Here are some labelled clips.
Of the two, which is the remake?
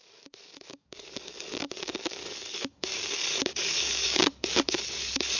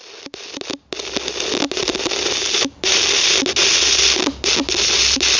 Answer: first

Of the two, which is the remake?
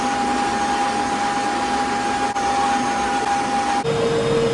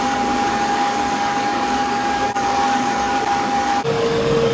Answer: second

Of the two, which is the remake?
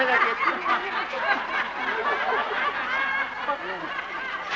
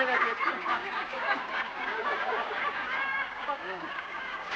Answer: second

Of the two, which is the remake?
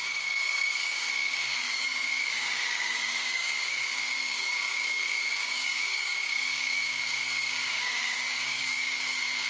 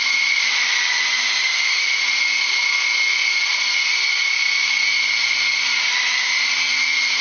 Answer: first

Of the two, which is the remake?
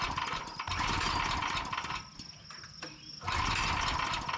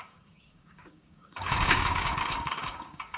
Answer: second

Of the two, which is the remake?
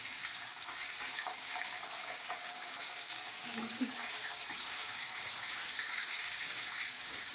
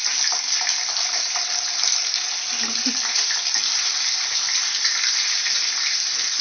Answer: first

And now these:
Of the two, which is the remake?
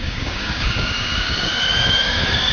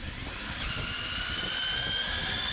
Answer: first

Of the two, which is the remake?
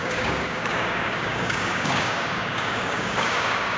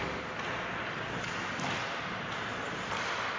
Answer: first